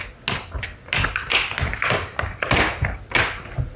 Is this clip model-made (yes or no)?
no